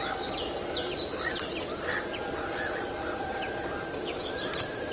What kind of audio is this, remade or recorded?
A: recorded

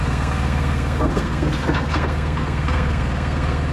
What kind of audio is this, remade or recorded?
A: remade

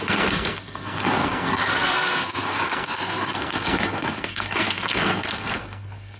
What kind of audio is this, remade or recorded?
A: remade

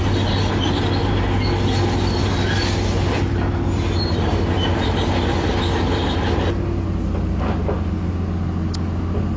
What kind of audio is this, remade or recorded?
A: recorded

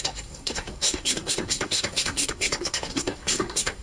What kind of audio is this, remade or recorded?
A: remade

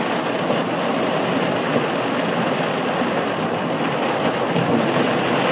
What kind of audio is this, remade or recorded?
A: recorded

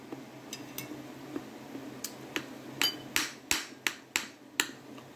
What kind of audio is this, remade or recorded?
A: recorded